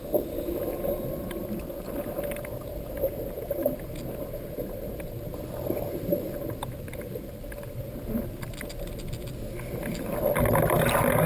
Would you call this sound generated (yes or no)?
no